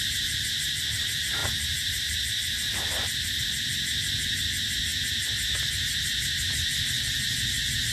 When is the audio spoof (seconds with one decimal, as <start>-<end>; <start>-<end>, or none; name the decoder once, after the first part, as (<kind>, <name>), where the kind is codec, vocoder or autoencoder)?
none